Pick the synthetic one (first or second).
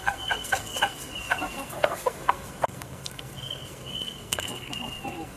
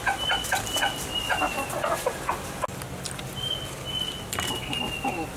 first